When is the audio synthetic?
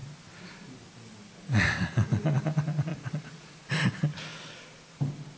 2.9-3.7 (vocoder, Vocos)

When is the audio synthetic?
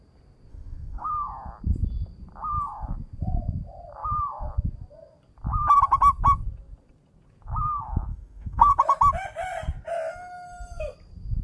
0.5-1.1 (autoencoder, DAC-VAE); 8.1-8.7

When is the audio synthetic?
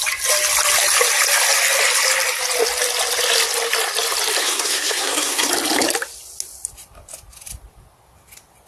4.4-5.5 (codec, SNAC)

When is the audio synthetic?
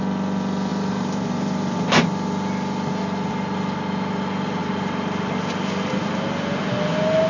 0.7-2.0 (vocoder, BigVGAN v2)